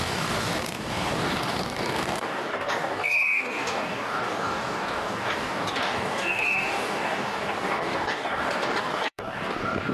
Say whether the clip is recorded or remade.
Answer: remade